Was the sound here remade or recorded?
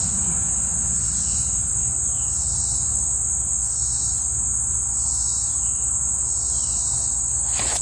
recorded